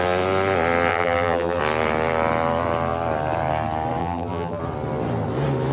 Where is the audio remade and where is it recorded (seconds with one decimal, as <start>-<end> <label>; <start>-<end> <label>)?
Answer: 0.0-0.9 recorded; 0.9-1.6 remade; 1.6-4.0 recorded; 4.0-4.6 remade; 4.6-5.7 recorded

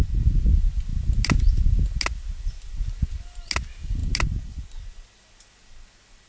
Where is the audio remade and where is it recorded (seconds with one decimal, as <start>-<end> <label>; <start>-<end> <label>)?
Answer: 0.0-6.3 recorded

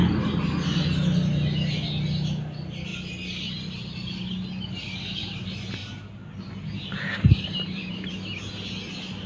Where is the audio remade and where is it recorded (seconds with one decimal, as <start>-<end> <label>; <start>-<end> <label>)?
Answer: 0.0-5.8 recorded; 5.8-8.1 remade; 8.1-9.3 recorded

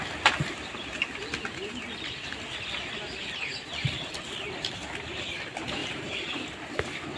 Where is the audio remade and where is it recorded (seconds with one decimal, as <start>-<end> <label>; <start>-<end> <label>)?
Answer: 0.0-3.5 recorded; 3.5-4.2 remade; 4.2-5.8 recorded; 5.8-6.4 remade; 6.4-7.2 recorded

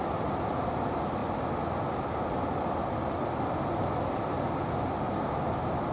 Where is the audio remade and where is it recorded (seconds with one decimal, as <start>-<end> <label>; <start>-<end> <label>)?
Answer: 0.0-5.9 recorded